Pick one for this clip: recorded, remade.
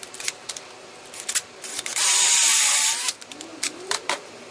remade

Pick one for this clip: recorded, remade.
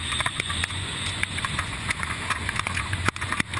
remade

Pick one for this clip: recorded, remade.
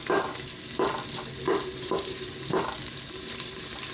recorded